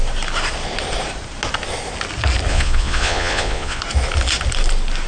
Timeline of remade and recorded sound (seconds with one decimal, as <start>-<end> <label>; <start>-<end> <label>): 0.0-2.5 recorded; 2.5-3.8 remade; 3.8-5.1 recorded